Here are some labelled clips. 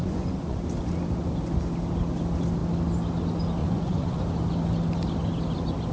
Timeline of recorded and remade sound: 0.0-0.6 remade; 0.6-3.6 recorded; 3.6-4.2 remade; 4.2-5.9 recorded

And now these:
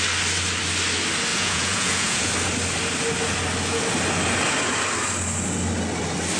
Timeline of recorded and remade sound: 0.0-1.3 recorded; 1.3-2.3 remade; 2.3-6.4 recorded

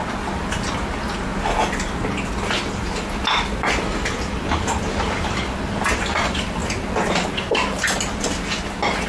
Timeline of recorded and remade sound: 0.0-9.1 recorded

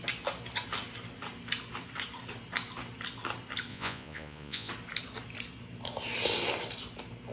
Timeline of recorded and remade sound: 0.0-3.7 recorded; 3.7-4.7 remade; 4.7-7.3 recorded

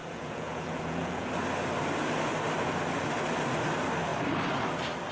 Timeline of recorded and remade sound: 0.0-1.3 remade; 1.3-5.1 recorded

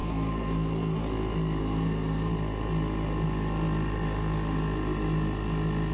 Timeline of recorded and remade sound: 0.0-1.0 remade; 1.0-1.6 recorded; 1.6-2.3 remade; 2.3-5.9 recorded